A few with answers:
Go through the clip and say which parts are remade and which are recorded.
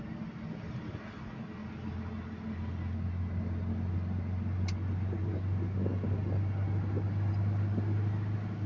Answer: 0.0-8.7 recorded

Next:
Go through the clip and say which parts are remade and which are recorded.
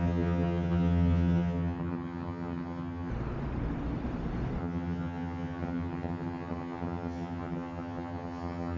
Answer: 0.0-3.1 remade; 3.1-4.6 recorded; 4.6-8.8 remade